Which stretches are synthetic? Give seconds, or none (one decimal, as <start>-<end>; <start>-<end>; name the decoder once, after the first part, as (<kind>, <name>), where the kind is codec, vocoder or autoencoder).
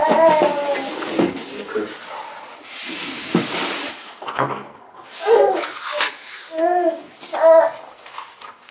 0.9-1.7 (codec, SNAC); 2.9-3.3; 3.9-7.1; 7.9-8.7